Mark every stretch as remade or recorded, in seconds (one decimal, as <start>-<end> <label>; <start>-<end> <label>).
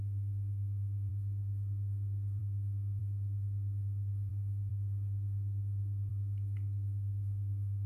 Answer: 0.0-1.1 remade; 1.1-2.4 recorded; 2.4-3.0 remade; 3.0-4.3 recorded; 4.3-4.7 remade; 4.7-6.1 recorded; 6.1-7.9 remade